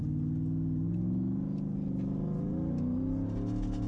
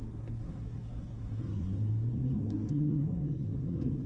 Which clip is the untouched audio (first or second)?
first